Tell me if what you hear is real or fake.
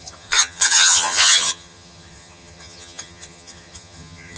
fake